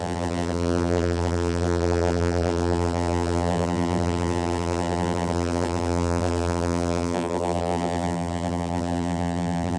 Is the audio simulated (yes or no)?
yes